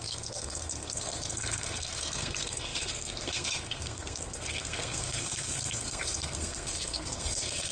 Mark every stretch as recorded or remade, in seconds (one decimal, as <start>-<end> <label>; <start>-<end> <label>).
0.0-7.7 remade